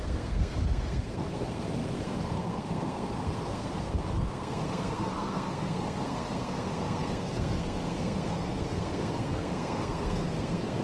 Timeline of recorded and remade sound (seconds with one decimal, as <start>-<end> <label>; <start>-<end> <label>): 0.0-10.8 remade

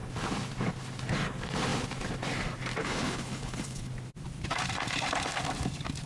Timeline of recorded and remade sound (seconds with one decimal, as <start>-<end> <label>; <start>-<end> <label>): 0.0-2.8 recorded; 2.8-3.9 remade; 3.9-6.1 recorded

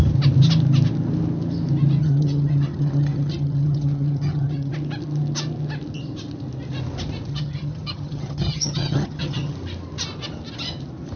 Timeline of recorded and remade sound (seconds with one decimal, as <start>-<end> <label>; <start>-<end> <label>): 0.0-2.0 recorded; 2.0-4.7 remade; 4.7-7.3 recorded; 7.3-9.5 remade; 9.5-11.2 recorded

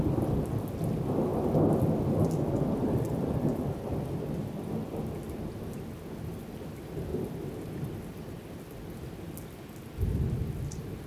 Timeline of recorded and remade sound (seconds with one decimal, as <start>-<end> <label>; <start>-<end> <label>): 0.0-11.1 recorded

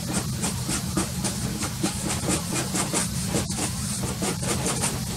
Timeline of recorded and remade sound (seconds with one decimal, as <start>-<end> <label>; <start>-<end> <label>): 0.0-1.5 recorded; 1.5-2.2 remade; 2.2-5.2 recorded

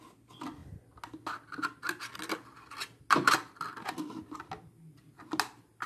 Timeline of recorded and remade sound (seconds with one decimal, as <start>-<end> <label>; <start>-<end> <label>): 0.0-5.9 recorded

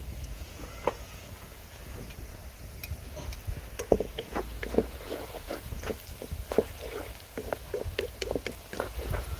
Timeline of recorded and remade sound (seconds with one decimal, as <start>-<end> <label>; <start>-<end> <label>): 0.0-2.4 remade; 2.4-3.9 recorded; 3.9-5.9 remade; 5.9-9.0 recorded; 9.0-9.4 remade